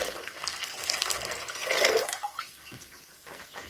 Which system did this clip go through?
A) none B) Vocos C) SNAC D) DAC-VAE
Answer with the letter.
C